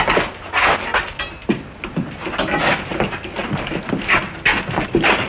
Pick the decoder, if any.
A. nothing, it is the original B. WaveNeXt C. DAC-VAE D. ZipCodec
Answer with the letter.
A